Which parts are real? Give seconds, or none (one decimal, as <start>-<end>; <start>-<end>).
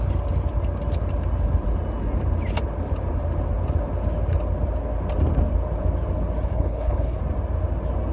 0.0-6.5; 7.2-8.1